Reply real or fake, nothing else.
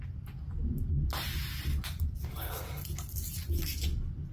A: real